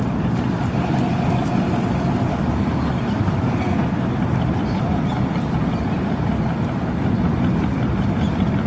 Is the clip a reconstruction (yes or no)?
no